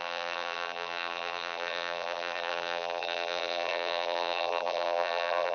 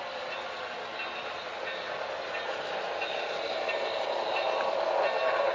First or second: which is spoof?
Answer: first